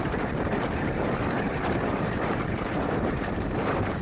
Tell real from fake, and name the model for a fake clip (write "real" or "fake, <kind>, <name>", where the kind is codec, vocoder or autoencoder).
fake, vocoder, BigVGAN v2